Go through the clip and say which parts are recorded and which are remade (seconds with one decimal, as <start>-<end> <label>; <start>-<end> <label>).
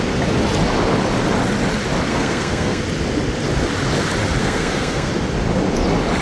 0.0-2.1 recorded; 2.1-2.8 remade; 2.8-4.4 recorded; 4.4-5.1 remade; 5.1-6.2 recorded